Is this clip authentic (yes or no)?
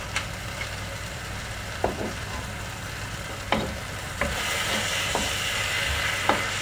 no